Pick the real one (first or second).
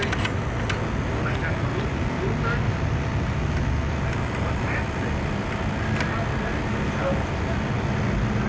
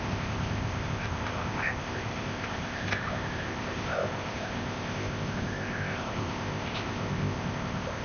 first